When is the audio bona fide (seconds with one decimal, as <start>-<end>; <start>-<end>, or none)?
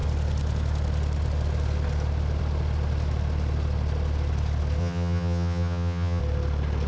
0.0-4.8; 6.2-6.9